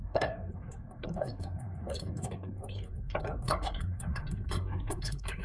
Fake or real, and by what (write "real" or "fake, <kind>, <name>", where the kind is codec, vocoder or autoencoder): fake, codec, SNAC